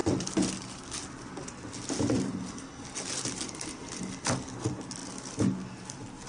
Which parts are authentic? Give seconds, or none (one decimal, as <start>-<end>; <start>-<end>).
5.0-6.3